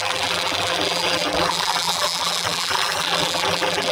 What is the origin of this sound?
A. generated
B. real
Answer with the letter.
A